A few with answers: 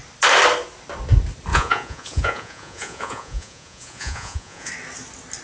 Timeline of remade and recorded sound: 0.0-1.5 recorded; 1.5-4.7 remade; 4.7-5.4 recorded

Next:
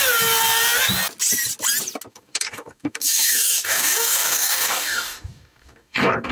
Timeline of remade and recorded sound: 0.0-2.1 recorded; 2.1-6.3 remade

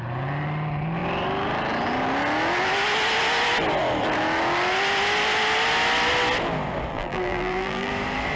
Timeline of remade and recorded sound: 0.0-6.9 recorded; 6.9-7.9 remade; 7.9-8.4 recorded

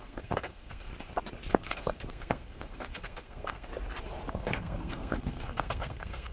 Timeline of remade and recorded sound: 0.0-0.9 remade; 0.9-1.5 recorded; 1.5-3.7 remade; 3.7-4.3 recorded; 4.3-6.3 remade

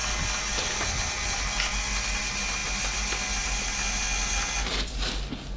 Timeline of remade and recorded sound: 0.0-5.6 recorded